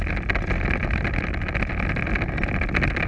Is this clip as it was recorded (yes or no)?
yes